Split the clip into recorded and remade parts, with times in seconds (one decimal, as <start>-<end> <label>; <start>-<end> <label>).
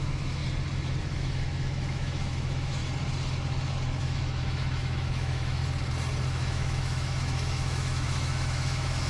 0.0-0.4 remade; 0.4-1.0 recorded; 1.0-2.8 remade; 2.8-4.0 recorded; 4.0-5.6 remade; 5.6-6.3 recorded; 6.3-9.1 remade